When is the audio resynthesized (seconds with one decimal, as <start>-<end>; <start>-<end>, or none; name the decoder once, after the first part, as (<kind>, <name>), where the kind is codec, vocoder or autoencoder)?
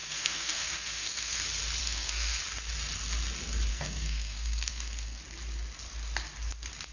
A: 0.0-1.4 (codec, SNAC); 1.8-2.4; 3.7-5.2